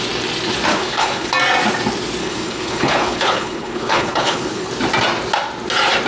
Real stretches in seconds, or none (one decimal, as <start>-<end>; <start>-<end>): 0.0-0.7; 1.3-2.2; 4.7-6.1